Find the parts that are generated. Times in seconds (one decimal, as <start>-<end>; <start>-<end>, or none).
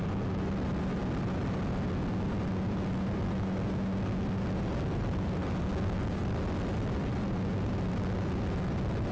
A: 5.7-6.2